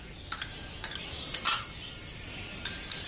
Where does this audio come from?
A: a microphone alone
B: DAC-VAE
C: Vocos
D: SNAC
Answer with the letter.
A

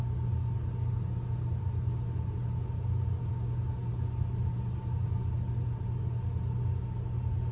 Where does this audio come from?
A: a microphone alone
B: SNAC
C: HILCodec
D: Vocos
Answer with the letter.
A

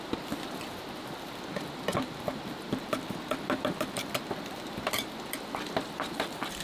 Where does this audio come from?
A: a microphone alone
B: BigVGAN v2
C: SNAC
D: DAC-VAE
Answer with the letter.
B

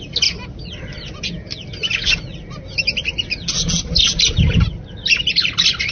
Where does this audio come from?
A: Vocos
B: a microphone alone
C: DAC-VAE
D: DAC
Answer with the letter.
B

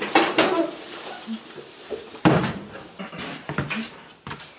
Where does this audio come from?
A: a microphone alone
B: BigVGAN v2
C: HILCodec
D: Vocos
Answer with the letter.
B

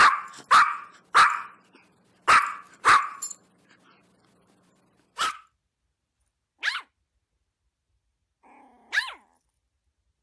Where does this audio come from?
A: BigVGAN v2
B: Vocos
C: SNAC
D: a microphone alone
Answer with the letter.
D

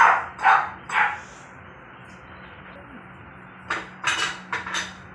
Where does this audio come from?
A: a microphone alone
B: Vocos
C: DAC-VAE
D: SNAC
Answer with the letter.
A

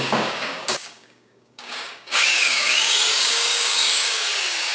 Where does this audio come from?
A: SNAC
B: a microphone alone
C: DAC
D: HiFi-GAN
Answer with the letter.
C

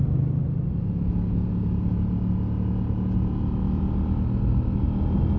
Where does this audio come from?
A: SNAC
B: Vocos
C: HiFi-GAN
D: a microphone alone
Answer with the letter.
D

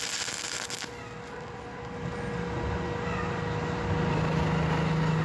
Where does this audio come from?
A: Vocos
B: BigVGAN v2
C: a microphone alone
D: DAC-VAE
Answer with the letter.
C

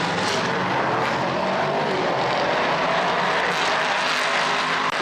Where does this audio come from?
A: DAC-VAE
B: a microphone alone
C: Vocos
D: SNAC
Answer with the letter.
B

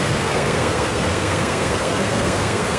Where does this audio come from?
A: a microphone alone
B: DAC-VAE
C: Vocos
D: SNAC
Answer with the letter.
D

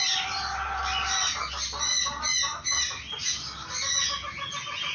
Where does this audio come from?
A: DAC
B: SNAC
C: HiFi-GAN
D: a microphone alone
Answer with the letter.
D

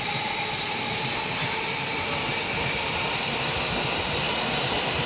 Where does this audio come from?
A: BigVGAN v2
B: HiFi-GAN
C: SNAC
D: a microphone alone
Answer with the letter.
D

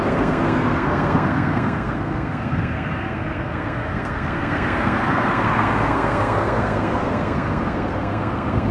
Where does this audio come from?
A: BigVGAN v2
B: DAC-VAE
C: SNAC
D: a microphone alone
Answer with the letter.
C